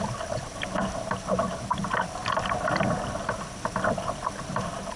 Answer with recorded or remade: recorded